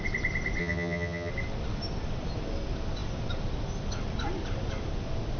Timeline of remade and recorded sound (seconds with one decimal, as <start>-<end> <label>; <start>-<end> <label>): 0.0-0.6 recorded; 0.6-1.3 remade; 1.3-5.4 recorded